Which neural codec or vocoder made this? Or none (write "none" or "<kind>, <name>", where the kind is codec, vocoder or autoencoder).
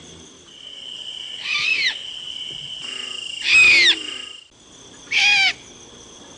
none